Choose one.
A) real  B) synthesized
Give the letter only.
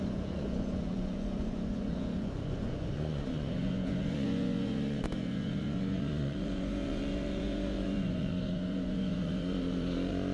B